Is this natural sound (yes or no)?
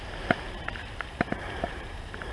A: no